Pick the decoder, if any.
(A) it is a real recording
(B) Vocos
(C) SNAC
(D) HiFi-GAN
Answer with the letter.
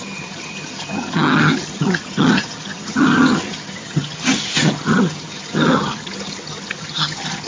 D